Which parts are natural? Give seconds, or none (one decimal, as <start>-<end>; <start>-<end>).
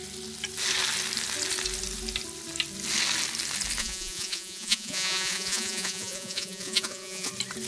0.0-3.8; 7.3-7.7